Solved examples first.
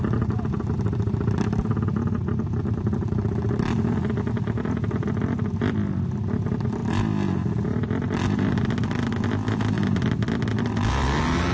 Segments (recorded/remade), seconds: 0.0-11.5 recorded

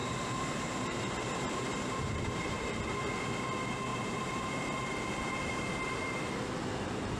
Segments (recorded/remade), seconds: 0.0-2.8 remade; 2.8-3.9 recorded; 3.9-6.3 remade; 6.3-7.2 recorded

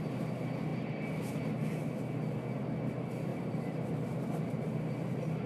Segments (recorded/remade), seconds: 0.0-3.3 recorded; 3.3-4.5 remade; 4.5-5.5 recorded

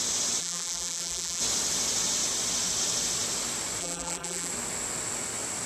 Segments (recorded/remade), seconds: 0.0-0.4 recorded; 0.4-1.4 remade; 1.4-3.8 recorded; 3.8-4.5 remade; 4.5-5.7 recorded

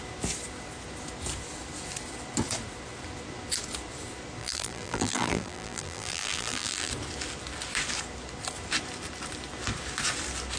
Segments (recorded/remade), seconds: 0.0-4.4 recorded; 4.4-6.9 remade; 6.9-10.6 recorded

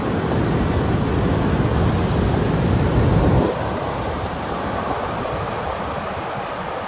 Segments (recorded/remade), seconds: 0.0-2.4 recorded; 2.4-6.5 remade; 6.5-6.9 recorded

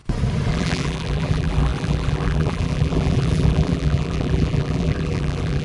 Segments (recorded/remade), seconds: 0.0-0.5 recorded; 0.5-5.6 remade